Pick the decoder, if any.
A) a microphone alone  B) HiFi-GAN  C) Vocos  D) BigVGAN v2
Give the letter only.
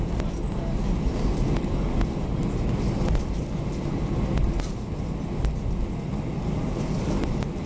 A